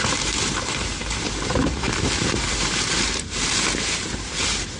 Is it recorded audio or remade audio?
remade